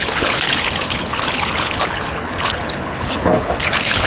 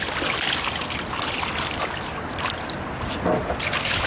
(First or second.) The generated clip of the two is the first